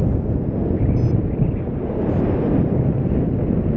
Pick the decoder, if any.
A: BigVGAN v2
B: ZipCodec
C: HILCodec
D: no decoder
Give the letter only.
D